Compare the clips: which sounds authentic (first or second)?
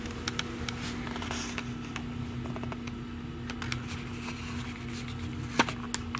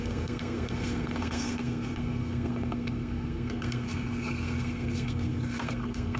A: first